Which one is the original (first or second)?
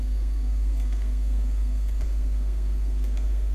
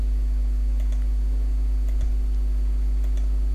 second